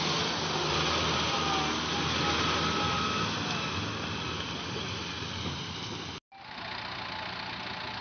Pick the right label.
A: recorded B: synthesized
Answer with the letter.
A